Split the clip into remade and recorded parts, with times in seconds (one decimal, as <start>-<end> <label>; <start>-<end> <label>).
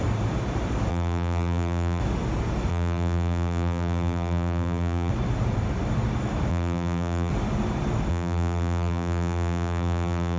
0.0-0.9 recorded; 0.9-2.0 remade; 2.0-2.7 recorded; 2.7-5.1 remade; 5.1-6.5 recorded; 6.5-7.3 remade; 7.3-8.1 recorded; 8.1-10.4 remade